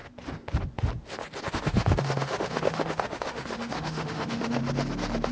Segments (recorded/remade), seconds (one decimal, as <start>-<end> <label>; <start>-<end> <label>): 0.0-1.5 recorded; 1.5-4.6 remade; 4.6-5.3 recorded